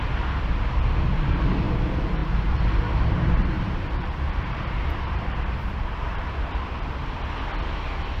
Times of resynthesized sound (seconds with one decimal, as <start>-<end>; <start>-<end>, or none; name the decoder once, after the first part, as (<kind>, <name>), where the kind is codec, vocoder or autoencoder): 2.2-7.1 (vocoder, BigVGAN v2)